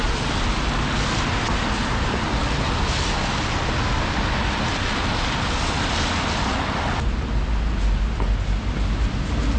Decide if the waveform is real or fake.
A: real